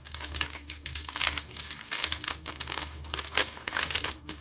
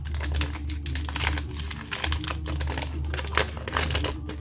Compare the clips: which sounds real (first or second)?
second